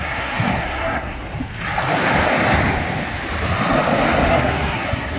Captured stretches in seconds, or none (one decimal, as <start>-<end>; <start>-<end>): 1.2-4.3